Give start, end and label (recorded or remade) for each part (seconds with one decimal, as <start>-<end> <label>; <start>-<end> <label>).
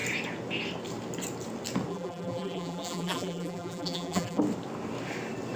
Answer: 0.0-1.9 recorded; 1.9-4.4 remade; 4.4-5.6 recorded